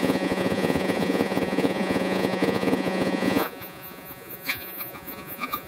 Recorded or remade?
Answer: remade